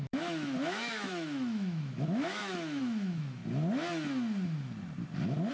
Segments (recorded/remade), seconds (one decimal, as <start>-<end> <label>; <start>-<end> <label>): 0.0-3.4 remade; 3.4-5.5 recorded